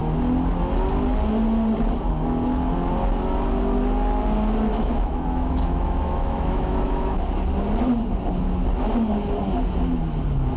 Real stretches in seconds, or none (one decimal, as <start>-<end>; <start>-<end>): 0.0-4.7; 7.2-10.6